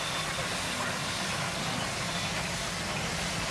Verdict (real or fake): real